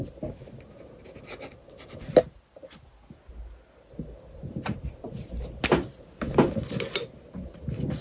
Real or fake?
real